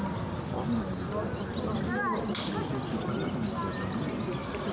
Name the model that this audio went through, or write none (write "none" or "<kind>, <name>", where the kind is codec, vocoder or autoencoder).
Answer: none